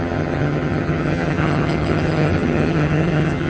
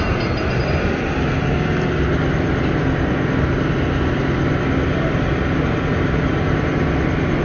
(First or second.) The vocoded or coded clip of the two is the first